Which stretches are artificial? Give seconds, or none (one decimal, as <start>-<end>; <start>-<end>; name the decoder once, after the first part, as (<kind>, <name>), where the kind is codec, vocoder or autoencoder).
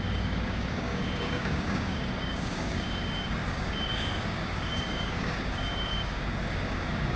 0.0-7.2 (codec, DAC)